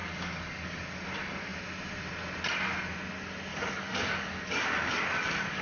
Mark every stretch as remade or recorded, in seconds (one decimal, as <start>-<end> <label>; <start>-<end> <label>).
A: 0.0-0.8 remade; 0.8-3.5 recorded; 3.5-5.6 remade